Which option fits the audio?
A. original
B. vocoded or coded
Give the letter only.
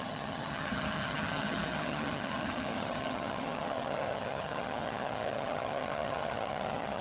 B